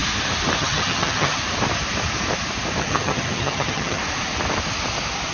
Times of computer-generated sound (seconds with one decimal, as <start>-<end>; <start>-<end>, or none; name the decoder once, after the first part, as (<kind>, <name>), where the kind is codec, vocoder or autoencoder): 0.6-1.4 (vocoder, HiFi-GAN); 2.8-4.0